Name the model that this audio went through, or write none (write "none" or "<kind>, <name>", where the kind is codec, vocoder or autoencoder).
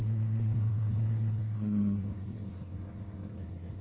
codec, SNAC